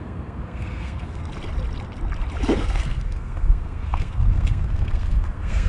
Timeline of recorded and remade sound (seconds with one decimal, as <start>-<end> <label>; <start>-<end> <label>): 0.0-1.3 remade; 1.3-2.5 recorded; 2.5-5.7 remade